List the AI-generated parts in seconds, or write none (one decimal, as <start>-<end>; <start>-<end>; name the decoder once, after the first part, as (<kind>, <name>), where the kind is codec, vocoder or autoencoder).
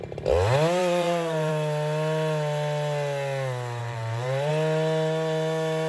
0.8-1.5 (vocoder, BigVGAN v2); 3.8-4.5